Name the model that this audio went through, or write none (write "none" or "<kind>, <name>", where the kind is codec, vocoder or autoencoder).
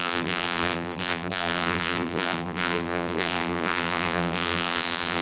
vocoder, BigVGAN v2